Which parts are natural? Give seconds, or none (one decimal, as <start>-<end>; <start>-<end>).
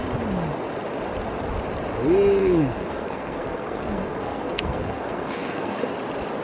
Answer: 0.0-2.4; 5.8-6.4